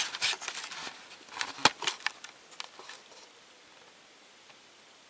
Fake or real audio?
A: real